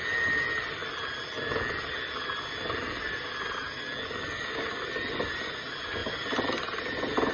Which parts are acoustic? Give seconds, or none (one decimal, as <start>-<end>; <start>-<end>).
0.0-7.3